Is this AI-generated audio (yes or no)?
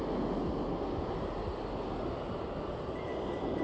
no